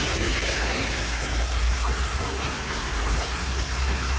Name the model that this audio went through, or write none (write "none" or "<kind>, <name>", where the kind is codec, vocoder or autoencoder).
codec, SNAC